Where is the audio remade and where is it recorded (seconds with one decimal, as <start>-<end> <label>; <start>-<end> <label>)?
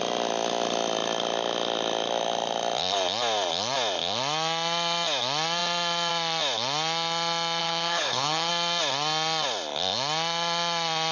0.0-7.6 recorded; 7.6-8.5 remade; 8.5-11.1 recorded